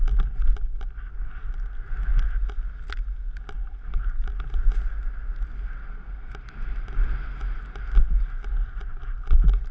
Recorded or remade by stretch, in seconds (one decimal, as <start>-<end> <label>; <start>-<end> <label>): 0.0-9.7 recorded